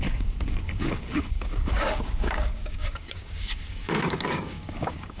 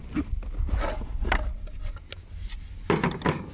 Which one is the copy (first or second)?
first